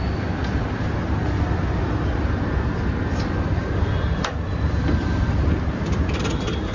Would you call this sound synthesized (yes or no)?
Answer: yes